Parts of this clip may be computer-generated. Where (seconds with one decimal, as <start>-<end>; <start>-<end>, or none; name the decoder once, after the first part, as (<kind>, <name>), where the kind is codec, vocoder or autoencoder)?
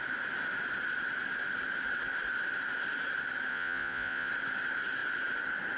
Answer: 3.5-4.3 (vocoder, Vocos)